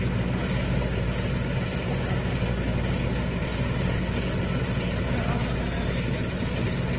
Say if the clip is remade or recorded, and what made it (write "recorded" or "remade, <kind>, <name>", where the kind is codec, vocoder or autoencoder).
recorded